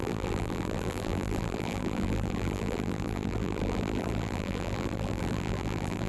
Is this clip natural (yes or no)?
no